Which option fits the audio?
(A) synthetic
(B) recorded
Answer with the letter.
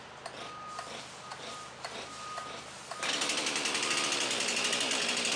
B